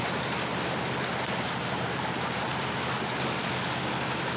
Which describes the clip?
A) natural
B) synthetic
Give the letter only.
A